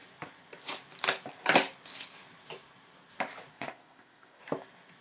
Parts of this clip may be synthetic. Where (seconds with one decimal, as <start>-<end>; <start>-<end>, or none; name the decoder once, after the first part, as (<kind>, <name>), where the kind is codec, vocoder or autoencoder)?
3.5-4.4 (codec, ZipCodec)